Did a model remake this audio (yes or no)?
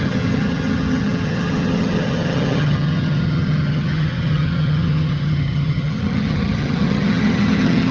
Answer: yes